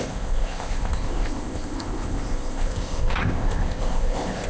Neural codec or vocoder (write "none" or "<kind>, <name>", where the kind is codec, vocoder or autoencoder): codec, ZipCodec